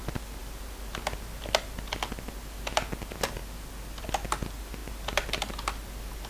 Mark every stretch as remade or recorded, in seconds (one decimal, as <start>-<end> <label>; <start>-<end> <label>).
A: 0.0-6.3 recorded

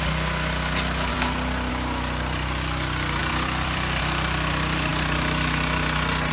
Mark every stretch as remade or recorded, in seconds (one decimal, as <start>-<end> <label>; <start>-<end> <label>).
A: 0.0-1.1 recorded; 1.1-1.7 remade; 1.7-3.2 recorded; 3.2-4.0 remade; 4.0-6.3 recorded

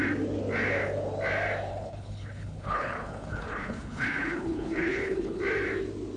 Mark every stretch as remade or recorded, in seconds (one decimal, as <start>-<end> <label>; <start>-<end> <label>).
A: 0.0-1.7 recorded; 1.7-5.4 remade; 5.4-6.2 recorded

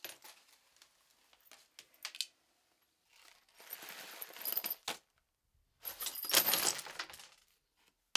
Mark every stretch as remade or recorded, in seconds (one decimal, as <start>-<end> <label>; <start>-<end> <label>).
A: 0.0-8.2 recorded

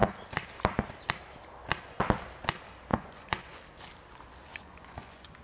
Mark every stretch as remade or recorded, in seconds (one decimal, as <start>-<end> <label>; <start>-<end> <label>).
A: 0.0-2.9 recorded; 2.9-3.6 remade; 3.6-4.5 recorded; 4.5-5.4 remade

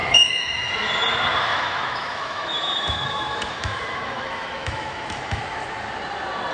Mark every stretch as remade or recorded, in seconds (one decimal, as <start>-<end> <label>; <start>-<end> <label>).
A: 0.0-0.7 remade; 0.7-1.5 recorded; 1.5-5.4 remade; 5.4-6.5 recorded

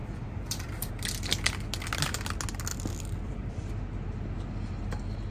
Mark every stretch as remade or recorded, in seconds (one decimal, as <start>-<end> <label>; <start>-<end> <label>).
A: 0.0-0.9 remade; 0.9-2.7 recorded; 2.7-3.7 remade; 3.7-5.3 recorded

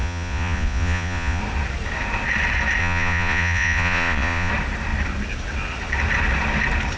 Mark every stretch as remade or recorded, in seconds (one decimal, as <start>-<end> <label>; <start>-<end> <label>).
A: 0.0-1.4 remade; 1.4-2.8 recorded; 2.8-4.5 remade; 4.5-7.0 recorded